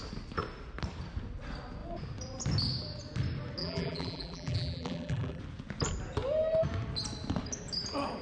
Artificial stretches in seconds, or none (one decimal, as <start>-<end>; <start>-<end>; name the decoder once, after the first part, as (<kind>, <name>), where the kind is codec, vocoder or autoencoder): 3.6-5.4 (vocoder, BigVGAN v2)